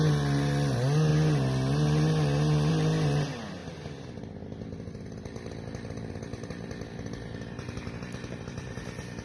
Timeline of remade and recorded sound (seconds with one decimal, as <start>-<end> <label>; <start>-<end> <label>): 0.0-9.2 recorded